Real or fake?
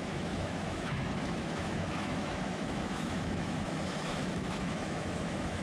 fake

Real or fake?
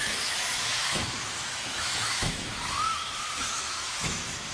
fake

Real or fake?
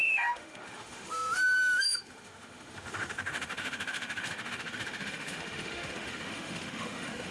fake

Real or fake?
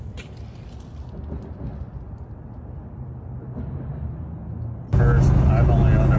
real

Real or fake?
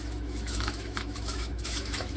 fake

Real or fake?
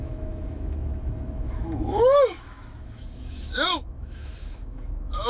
fake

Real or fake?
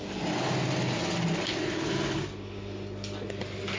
real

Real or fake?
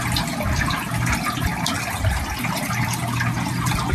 real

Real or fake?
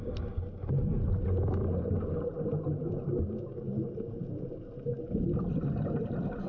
real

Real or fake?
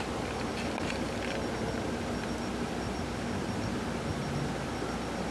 real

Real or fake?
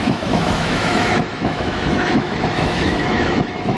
fake